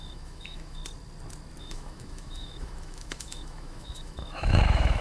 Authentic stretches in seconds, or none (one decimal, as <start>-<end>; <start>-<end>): 0.8-1.6